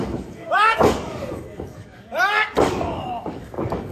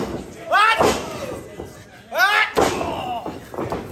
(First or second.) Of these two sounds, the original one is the second